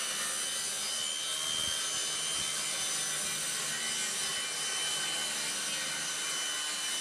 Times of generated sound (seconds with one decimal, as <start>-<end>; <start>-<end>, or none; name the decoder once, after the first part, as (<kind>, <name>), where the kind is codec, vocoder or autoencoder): none